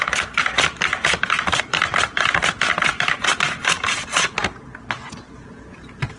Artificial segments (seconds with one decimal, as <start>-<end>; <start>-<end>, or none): none